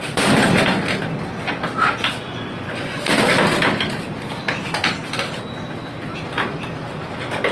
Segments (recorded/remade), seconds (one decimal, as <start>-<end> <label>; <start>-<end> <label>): 0.0-2.1 recorded; 2.1-3.0 remade; 3.0-7.5 recorded